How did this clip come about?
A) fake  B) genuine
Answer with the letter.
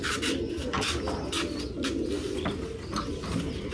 B